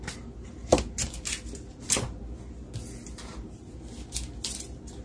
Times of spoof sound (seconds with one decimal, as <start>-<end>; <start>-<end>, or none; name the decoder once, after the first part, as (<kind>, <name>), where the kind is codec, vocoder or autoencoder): none